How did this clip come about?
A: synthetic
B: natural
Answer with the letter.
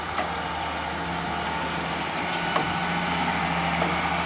B